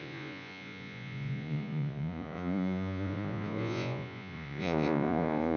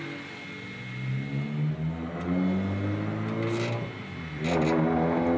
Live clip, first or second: second